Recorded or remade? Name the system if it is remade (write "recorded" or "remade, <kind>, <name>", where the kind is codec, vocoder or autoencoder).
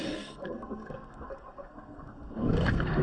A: remade, codec, SNAC